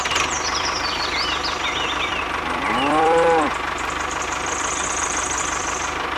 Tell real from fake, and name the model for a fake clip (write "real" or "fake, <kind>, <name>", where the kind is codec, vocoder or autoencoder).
fake, vocoder, BigVGAN v2